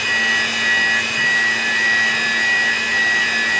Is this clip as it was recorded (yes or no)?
yes